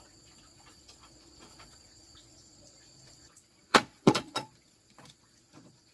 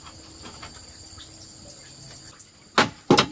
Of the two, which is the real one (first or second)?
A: second